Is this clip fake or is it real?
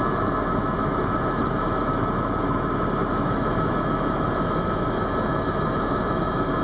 fake